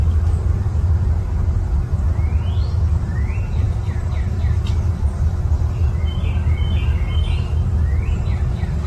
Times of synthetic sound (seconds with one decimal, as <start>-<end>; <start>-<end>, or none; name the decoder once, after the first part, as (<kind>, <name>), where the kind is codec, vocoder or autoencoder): 0.0-5.8 (vocoder, BigVGAN v2); 8.0-8.9